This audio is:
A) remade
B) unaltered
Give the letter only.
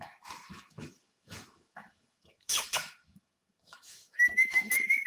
A